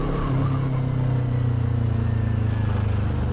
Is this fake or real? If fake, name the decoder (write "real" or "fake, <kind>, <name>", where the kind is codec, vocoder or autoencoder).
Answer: real